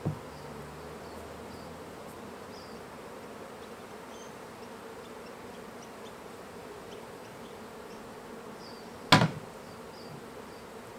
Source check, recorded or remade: recorded